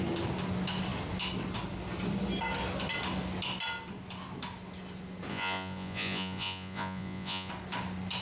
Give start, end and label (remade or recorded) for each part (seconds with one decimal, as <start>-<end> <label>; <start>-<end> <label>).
0.0-5.3 recorded; 5.3-7.5 remade; 7.5-8.2 recorded